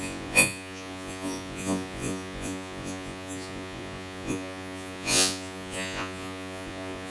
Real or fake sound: fake